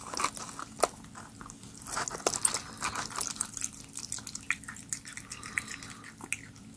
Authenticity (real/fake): real